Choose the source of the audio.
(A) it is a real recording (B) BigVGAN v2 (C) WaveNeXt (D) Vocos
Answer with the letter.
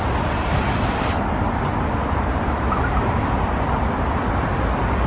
A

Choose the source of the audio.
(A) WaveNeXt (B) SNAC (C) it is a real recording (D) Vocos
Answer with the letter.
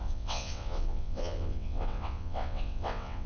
A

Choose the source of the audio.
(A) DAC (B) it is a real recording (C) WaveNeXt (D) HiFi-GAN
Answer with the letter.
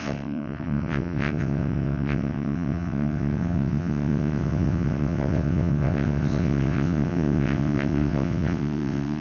C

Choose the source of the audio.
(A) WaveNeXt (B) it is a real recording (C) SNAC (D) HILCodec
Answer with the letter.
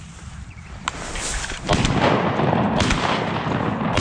B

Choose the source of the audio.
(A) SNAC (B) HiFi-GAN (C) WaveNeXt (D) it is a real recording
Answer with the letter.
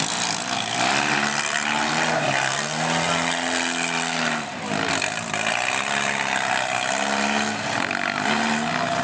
D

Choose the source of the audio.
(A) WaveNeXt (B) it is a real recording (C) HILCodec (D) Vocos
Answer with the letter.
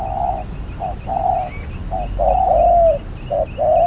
B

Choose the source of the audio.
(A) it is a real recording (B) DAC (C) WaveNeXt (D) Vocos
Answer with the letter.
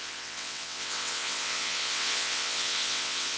C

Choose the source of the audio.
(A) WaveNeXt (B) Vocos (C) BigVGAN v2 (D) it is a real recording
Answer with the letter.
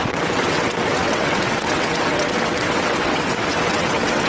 A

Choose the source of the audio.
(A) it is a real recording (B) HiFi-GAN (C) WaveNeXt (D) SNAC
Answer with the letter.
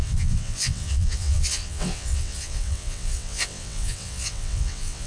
C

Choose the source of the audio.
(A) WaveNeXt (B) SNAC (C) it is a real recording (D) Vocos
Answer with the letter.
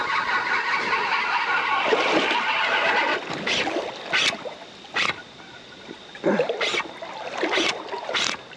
C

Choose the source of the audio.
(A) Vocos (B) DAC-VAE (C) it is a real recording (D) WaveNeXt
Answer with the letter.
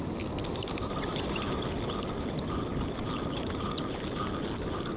C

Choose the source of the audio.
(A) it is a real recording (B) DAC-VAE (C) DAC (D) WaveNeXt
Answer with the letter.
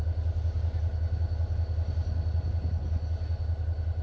A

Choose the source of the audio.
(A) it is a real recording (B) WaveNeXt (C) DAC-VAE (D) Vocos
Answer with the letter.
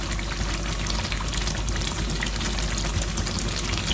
A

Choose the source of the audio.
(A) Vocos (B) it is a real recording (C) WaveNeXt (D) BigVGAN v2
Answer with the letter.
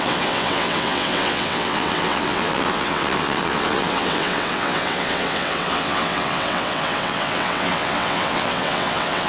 C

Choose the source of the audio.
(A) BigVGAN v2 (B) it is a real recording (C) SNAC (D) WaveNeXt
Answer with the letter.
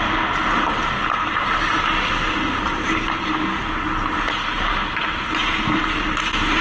B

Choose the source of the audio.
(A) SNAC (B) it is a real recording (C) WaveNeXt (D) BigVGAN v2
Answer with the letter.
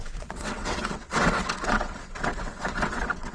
C